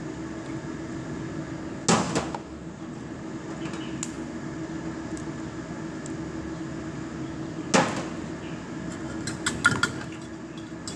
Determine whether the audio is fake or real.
real